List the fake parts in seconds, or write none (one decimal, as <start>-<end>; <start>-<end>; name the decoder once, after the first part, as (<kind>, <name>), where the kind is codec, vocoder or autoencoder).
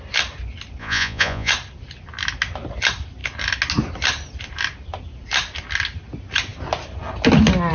0.8-1.5 (vocoder, Vocos)